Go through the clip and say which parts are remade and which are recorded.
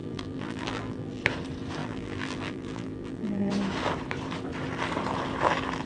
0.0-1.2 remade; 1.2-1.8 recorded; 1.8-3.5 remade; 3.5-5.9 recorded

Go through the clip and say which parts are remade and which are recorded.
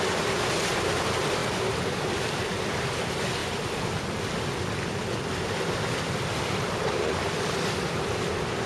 0.0-3.4 recorded; 3.4-8.2 remade; 8.2-8.7 recorded